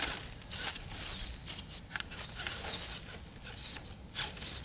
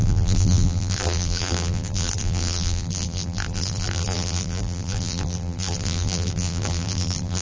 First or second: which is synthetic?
second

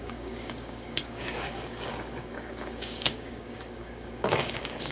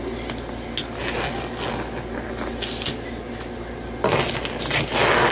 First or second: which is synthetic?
first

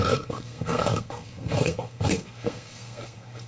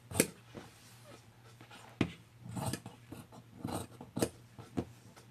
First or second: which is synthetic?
first